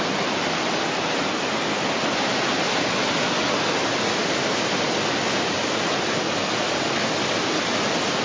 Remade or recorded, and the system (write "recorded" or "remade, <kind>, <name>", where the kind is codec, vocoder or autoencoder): recorded